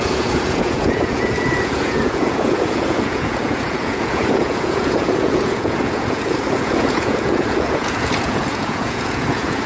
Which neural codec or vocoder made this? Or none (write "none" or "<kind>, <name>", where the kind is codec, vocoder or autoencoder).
vocoder, Vocos